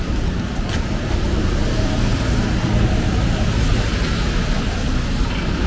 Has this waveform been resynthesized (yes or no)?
no